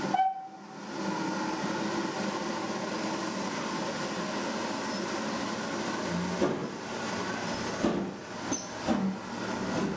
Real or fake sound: real